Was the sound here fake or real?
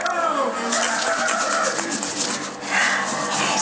real